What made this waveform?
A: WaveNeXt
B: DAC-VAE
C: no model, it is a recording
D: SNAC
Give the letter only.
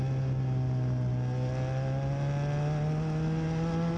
C